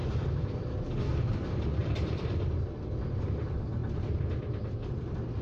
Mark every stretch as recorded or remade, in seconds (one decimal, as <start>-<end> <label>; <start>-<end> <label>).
0.0-1.8 recorded; 1.8-2.3 remade; 2.3-5.4 recorded